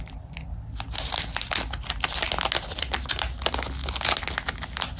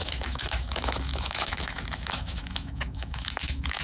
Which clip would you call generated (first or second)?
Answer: second